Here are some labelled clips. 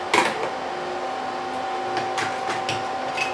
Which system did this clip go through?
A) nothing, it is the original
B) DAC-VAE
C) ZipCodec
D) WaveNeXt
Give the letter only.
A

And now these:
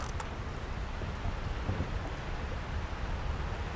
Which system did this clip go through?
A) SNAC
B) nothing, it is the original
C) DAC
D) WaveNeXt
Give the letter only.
B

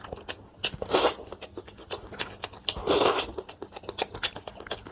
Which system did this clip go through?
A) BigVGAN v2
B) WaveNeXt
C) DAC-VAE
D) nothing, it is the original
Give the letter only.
D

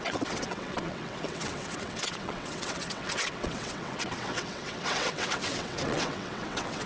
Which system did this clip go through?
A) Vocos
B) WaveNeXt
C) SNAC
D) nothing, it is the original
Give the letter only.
B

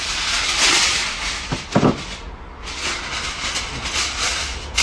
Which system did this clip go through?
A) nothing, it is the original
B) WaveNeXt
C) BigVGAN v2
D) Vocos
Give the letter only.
A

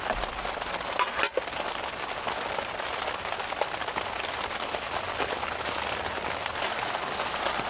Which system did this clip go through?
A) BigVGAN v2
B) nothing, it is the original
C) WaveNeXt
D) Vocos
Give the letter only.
B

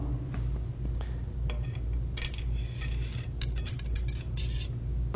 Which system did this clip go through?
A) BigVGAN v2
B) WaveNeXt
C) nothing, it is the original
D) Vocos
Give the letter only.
C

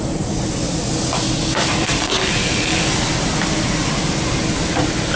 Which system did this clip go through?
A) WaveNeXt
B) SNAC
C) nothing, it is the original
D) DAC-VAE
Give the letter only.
C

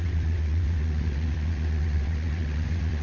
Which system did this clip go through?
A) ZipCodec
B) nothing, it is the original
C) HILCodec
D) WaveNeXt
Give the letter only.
D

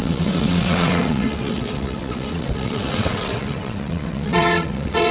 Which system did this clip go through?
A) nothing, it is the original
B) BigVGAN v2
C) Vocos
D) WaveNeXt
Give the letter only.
D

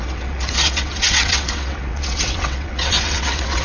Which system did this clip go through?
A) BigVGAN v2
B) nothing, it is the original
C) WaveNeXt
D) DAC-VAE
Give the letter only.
C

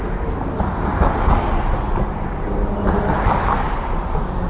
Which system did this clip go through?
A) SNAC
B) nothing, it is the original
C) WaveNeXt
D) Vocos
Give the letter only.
B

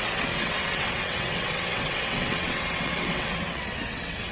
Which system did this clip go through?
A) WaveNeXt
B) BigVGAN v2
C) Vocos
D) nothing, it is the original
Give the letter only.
A